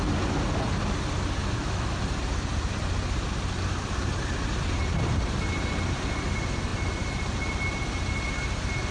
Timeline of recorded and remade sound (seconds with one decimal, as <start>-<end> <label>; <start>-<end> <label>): 0.0-1.4 recorded; 1.4-2.0 remade; 2.0-8.9 recorded